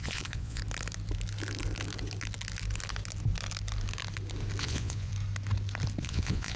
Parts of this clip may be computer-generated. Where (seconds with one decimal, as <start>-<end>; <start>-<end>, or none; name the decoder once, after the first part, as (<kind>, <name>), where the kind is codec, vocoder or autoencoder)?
0.0-0.6 (vocoder, Vocos); 4.6-5.1; 6.0-6.6